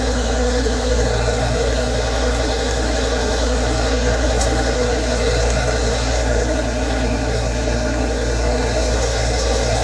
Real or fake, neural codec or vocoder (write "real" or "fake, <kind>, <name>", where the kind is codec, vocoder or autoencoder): fake, codec, SNAC